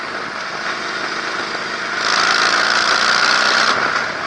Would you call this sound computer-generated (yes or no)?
no